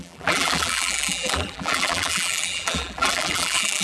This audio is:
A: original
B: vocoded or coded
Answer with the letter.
B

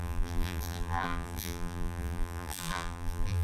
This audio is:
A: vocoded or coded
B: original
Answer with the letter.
A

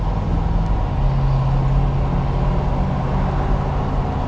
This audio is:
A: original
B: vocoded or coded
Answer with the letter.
A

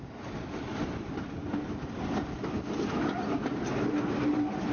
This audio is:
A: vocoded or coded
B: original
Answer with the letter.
B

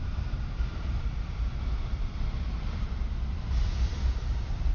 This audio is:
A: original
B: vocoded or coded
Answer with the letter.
B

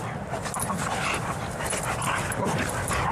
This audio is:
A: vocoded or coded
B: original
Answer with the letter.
B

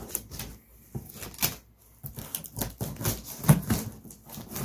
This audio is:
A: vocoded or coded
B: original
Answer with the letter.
B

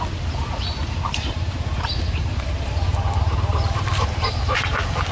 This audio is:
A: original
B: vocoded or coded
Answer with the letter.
B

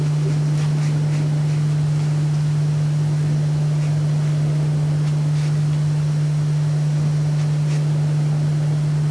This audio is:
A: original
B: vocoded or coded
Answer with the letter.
A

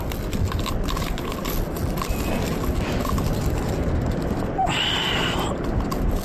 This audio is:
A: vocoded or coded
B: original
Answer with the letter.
B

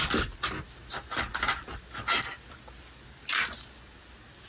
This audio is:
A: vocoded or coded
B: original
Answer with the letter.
B